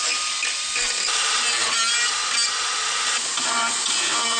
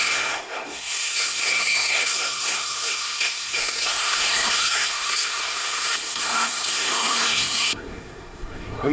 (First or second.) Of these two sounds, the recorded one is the first